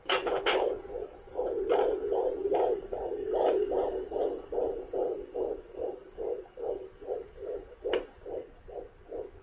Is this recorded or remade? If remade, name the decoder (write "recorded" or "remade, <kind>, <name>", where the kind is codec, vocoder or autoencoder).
recorded